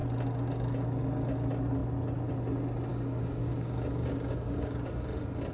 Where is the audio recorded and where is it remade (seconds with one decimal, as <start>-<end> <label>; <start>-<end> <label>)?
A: 0.0-2.9 recorded; 2.9-4.9 remade; 4.9-5.5 recorded